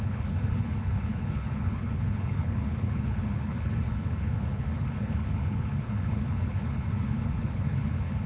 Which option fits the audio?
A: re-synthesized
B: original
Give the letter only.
A